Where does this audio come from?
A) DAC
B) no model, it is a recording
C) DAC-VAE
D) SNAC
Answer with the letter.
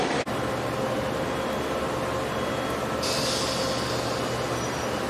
B